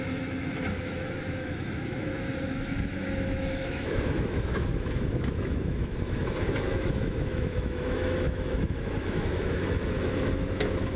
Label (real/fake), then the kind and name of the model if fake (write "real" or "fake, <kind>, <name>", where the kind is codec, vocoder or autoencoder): fake, autoencoder, DAC-VAE